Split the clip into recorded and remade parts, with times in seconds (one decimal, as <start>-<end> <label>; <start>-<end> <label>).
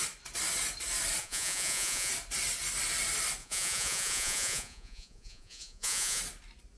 0.0-1.2 recorded; 1.2-2.1 remade; 2.1-3.4 recorded; 3.4-6.2 remade; 6.2-6.8 recorded